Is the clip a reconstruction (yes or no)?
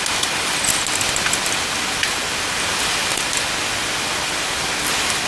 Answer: no